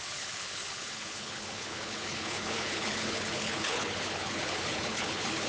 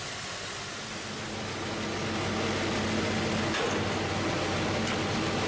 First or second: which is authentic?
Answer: second